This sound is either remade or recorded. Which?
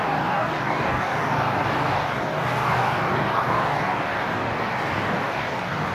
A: remade